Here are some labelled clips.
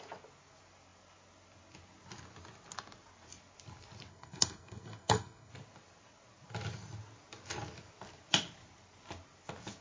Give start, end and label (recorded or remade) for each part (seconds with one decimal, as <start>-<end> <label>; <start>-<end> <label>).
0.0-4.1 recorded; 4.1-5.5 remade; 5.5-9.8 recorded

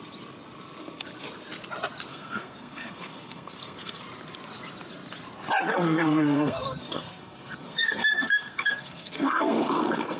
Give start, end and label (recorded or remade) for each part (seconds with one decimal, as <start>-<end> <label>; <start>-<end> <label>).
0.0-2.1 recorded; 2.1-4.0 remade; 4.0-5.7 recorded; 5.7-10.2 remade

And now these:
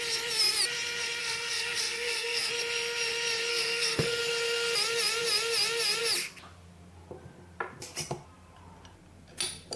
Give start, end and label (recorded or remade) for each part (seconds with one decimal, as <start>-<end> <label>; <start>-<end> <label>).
0.0-1.2 recorded; 1.2-2.5 remade; 2.5-3.5 recorded; 3.5-4.2 remade; 4.2-9.8 recorded

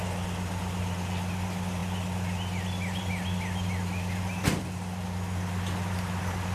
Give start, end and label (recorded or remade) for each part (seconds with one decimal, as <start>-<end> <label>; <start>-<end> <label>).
0.0-6.5 recorded

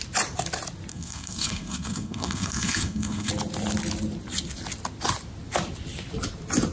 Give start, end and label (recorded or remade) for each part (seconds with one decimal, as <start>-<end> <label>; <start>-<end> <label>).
0.0-0.9 recorded; 0.9-3.3 remade; 3.3-6.7 recorded